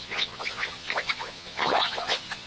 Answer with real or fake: fake